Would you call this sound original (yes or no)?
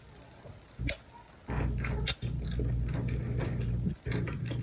yes